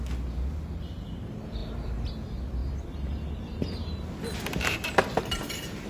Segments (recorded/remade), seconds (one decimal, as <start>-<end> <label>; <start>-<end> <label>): 0.0-1.6 recorded; 1.6-2.1 remade; 2.1-2.6 recorded; 2.6-4.1 remade; 4.1-4.5 recorded; 4.5-5.9 remade